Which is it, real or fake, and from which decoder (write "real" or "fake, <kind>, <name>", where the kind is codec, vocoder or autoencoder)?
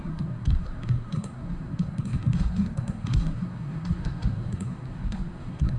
fake, codec, SNAC